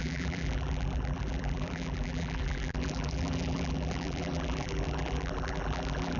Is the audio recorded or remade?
remade